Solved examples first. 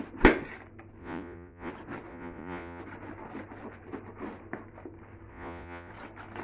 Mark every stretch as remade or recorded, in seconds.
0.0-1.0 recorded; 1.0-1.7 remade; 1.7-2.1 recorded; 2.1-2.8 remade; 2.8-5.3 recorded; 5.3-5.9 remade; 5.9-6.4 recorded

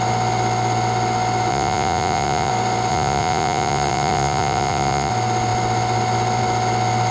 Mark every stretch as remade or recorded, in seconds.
0.0-1.5 recorded; 1.5-2.5 remade; 2.5-2.9 recorded; 2.9-5.1 remade; 5.1-7.1 recorded